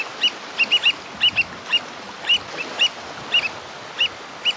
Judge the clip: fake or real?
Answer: real